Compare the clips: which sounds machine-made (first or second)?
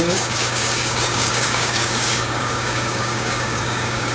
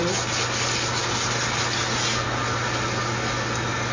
first